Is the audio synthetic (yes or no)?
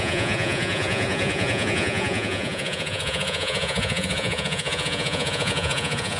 yes